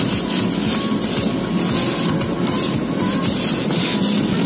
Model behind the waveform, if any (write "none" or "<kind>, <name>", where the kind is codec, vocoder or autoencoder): none